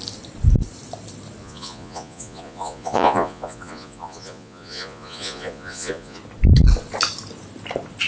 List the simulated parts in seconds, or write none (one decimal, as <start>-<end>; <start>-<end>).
1.4-6.2